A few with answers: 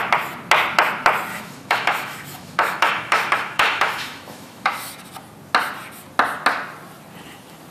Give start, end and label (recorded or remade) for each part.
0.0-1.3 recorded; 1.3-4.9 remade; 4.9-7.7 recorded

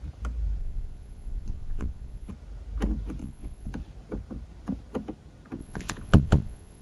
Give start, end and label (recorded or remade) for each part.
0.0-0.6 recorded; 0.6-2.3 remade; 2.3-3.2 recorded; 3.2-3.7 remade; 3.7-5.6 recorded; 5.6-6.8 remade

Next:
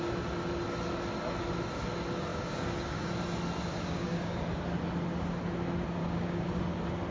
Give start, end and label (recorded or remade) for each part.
0.0-2.3 recorded; 2.3-3.1 remade; 3.1-3.7 recorded; 3.7-4.6 remade; 4.6-6.0 recorded; 6.0-6.6 remade; 6.6-7.1 recorded